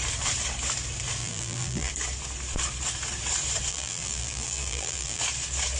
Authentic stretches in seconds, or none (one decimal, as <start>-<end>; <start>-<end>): 0.0-1.2; 1.9-3.7; 5.2-5.8